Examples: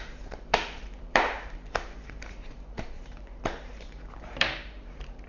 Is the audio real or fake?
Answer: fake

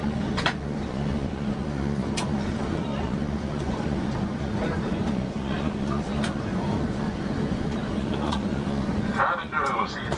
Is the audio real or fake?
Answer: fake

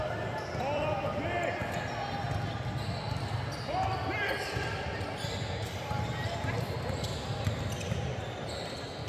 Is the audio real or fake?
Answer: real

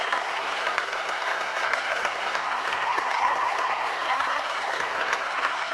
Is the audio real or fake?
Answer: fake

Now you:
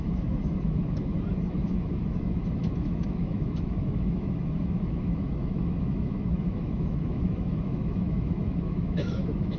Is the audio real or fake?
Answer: fake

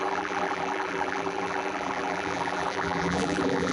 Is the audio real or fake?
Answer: fake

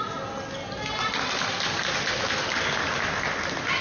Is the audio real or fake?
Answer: real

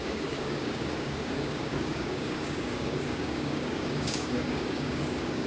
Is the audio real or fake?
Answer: fake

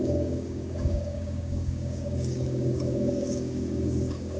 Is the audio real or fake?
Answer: fake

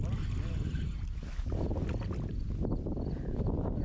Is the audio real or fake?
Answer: real